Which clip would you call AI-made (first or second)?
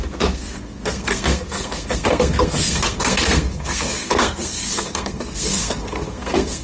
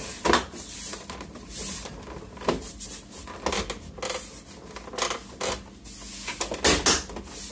first